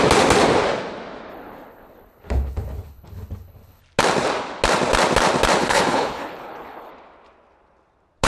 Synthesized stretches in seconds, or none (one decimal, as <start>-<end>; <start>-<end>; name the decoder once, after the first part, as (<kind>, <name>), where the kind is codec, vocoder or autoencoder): 1.3-3.8 (codec, HILCodec); 5.6-6.9